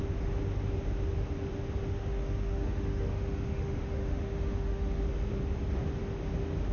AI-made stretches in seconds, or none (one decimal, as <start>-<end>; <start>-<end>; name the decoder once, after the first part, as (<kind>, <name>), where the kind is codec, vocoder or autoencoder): 1.9-5.0 (autoencoder, DAC-VAE)